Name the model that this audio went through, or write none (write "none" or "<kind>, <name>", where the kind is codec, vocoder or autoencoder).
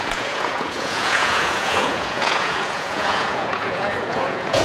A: vocoder, Vocos